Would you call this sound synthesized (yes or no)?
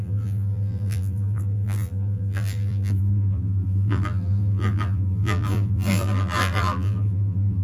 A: yes